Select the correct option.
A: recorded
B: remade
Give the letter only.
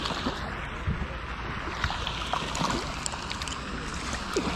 A